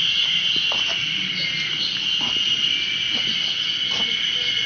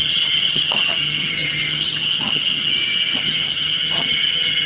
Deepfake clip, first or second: second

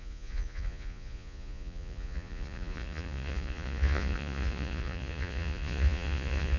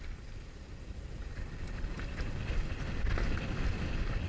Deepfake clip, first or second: first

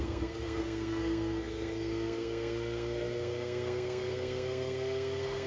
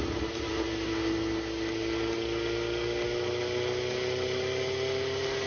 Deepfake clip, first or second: first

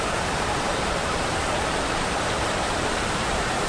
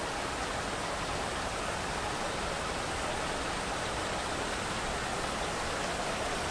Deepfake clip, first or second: first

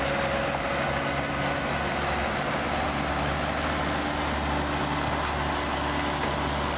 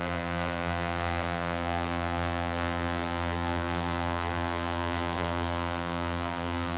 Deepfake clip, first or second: second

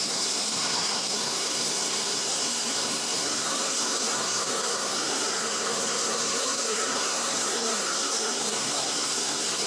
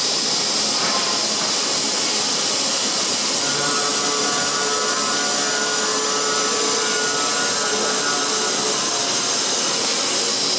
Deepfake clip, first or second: first